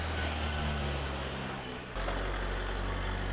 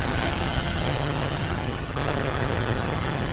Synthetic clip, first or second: second